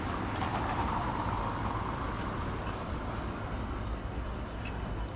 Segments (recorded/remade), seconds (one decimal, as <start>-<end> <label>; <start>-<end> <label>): 0.0-0.5 recorded; 0.5-2.5 remade; 2.5-5.2 recorded